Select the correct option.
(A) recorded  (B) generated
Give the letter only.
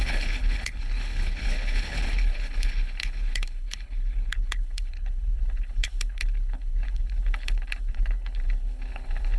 B